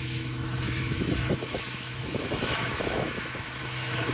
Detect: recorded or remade remade